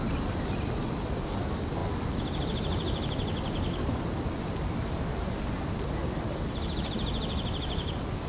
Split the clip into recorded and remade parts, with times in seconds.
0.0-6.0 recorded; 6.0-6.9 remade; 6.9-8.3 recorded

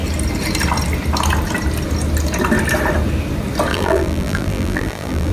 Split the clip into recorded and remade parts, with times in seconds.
0.0-3.7 recorded; 3.7-5.3 remade

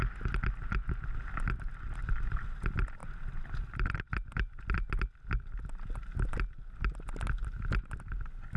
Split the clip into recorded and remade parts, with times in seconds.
0.0-3.0 recorded; 3.0-4.0 remade; 4.0-8.6 recorded

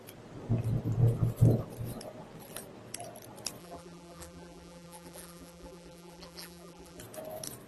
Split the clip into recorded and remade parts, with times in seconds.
0.0-3.6 recorded; 3.6-7.0 remade; 7.0-7.7 recorded